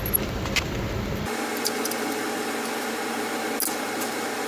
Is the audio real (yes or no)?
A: yes